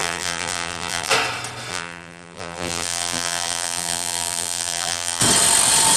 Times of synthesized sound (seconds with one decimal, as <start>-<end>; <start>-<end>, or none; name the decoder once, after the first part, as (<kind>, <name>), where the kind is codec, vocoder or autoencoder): 0.0-1.1 (vocoder, BigVGAN v2); 1.7-5.2